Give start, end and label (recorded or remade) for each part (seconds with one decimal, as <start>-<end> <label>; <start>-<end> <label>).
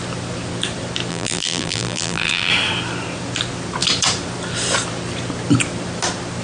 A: 0.0-1.1 recorded; 1.1-2.5 remade; 2.5-6.4 recorded